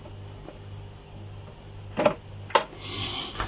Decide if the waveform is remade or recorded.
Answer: recorded